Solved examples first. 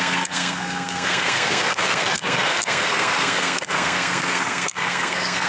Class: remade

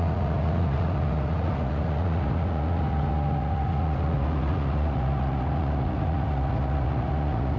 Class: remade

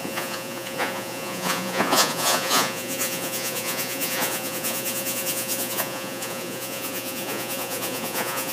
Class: remade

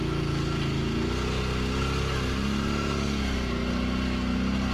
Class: recorded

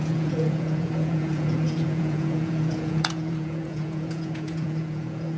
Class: remade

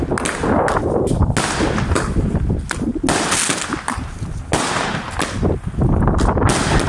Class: recorded